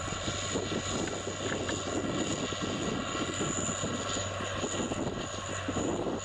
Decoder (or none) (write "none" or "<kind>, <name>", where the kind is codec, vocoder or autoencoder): none